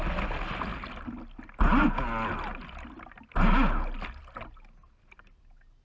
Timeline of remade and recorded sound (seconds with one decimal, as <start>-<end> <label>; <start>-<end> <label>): 0.0-5.8 recorded